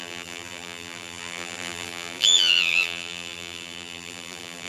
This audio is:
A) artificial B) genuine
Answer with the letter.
A